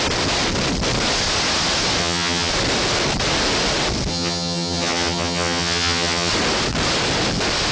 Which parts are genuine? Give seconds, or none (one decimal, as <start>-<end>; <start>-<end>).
0.0-2.0; 2.5-4.1; 6.3-7.7